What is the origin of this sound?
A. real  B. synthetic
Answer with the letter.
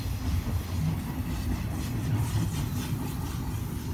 A